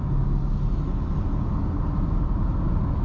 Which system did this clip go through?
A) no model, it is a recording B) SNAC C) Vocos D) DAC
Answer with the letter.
A